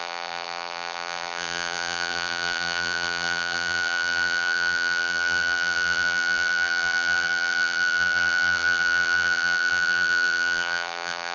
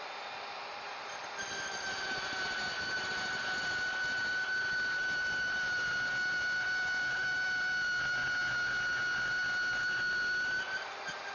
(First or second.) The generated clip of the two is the first